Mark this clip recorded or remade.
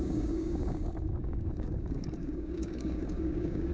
remade